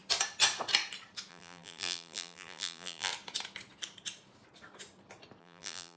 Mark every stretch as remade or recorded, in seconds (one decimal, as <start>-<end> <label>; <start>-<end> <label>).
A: 0.0-1.3 recorded; 1.3-3.1 remade; 3.1-5.4 recorded; 5.4-6.0 remade